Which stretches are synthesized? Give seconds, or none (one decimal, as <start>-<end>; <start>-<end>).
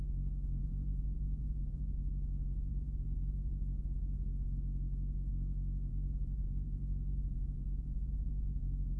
0.6-1.8; 2.7-3.5; 5.9-9.0